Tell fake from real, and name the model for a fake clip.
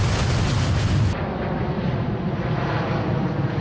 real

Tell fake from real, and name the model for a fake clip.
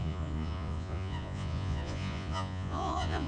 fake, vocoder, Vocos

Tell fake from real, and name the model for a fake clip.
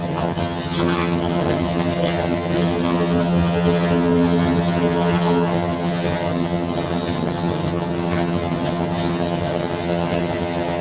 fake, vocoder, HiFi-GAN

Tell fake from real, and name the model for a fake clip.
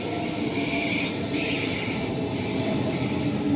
real